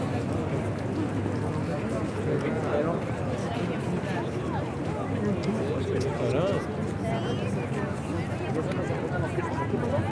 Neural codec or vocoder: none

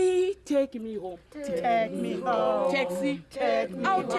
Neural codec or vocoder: none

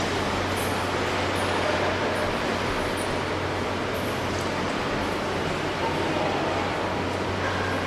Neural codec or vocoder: none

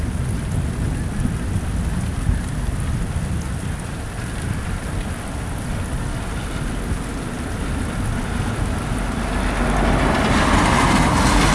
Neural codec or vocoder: none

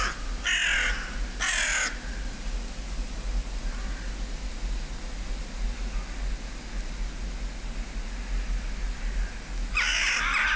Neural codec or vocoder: none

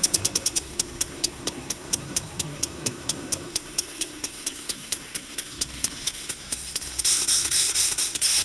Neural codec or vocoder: codec, SNAC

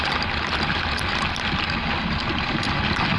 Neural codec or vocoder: none